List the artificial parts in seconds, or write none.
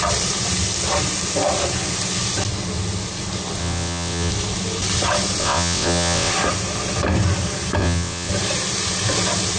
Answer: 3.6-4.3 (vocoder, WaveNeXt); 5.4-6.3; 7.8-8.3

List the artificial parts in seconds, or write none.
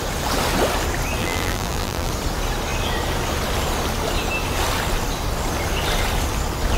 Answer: 1.2-2.1 (vocoder, BigVGAN v2)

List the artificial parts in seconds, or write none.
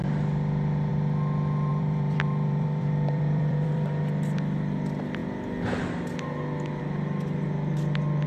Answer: 1.7-4.0 (vocoder, BigVGAN v2)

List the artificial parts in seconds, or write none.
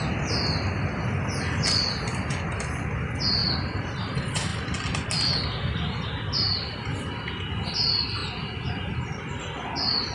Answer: none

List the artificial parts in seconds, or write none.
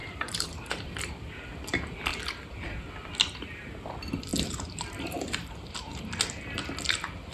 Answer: 0.0-1.3 (vocoder, BigVGAN v2); 4.3-6.0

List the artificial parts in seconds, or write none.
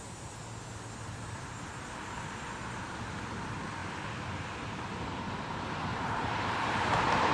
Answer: 5.9-7.3 (vocoder, BigVGAN v2)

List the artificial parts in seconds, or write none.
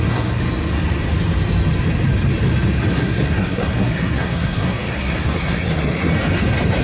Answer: 0.0-0.4 (codec, SNAC); 2.9-6.1